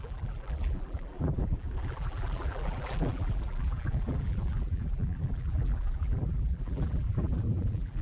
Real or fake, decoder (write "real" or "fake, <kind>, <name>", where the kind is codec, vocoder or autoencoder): fake, vocoder, BigVGAN v2